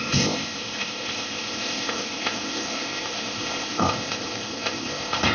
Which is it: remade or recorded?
remade